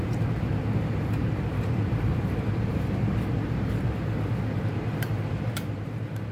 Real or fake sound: fake